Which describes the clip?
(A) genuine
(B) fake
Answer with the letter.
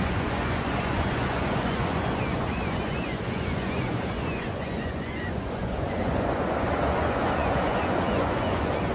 B